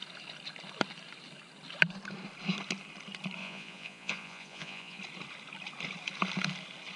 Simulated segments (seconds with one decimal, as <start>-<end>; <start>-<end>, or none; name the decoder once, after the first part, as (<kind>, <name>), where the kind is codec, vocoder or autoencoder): 3.4-5.0 (vocoder, Vocos)